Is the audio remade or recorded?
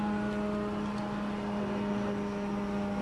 recorded